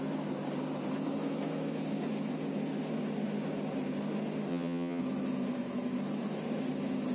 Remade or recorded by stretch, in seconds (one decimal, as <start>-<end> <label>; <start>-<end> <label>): 0.0-4.5 recorded; 4.5-5.0 remade; 5.0-7.1 recorded

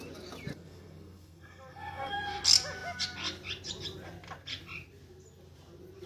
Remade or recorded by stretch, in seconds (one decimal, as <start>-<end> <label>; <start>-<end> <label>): 0.0-0.5 recorded; 0.5-2.2 remade; 2.2-6.1 recorded

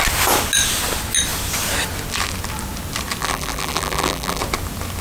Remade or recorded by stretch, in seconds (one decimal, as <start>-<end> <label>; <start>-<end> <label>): 0.0-3.2 recorded; 3.2-4.4 remade; 4.4-5.0 recorded

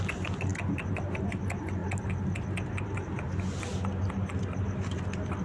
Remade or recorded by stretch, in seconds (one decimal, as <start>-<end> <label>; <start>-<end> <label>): 0.0-5.4 recorded

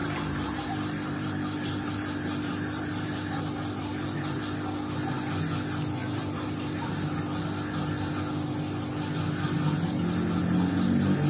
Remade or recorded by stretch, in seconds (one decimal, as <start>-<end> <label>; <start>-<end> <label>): 0.0-4.4 remade; 4.4-6.0 recorded; 6.0-7.0 remade; 7.0-11.3 recorded

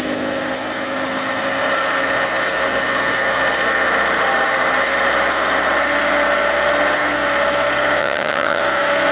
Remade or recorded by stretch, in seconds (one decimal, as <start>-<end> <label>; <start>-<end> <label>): 0.0-8.0 recorded; 8.0-8.6 remade; 8.6-9.1 recorded

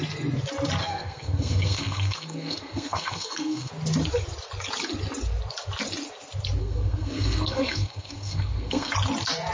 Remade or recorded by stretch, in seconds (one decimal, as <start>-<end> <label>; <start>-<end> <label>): 0.0-0.8 recorded; 0.8-3.7 remade; 3.7-6.6 recorded; 6.6-8.9 remade; 8.9-9.5 recorded